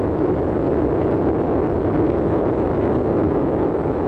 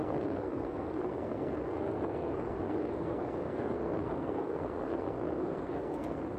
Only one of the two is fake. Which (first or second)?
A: second